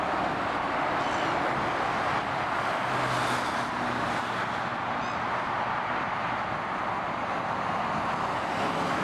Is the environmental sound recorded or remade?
recorded